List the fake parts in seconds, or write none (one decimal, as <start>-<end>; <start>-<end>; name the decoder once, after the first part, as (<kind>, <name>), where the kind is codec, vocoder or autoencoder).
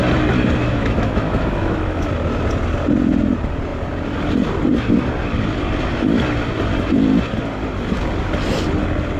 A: 0.6-2.1 (autoencoder, DAC-VAE)